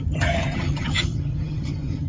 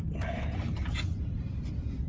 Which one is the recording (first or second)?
second